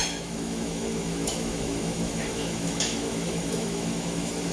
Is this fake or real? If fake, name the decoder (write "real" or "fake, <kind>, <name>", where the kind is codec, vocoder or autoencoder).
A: fake, autoencoder, DAC-VAE